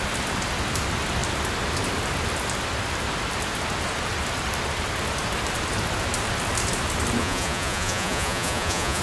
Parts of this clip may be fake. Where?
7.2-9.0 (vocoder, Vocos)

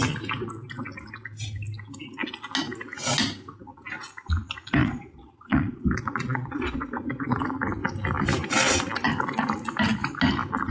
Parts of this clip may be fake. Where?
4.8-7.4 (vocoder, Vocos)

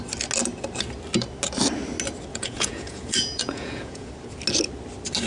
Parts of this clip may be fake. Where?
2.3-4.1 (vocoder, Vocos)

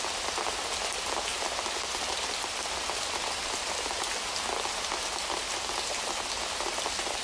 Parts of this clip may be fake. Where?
none